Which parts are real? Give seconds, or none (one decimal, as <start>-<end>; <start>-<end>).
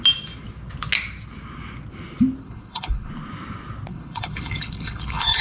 0.0-2.4; 3.1-3.9